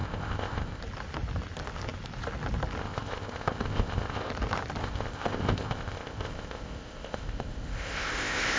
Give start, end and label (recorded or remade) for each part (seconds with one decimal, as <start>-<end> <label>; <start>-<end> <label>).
0.0-0.8 remade; 0.8-2.8 recorded; 2.8-4.3 remade; 4.3-4.8 recorded; 4.8-8.6 remade